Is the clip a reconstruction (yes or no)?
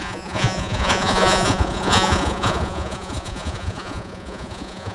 yes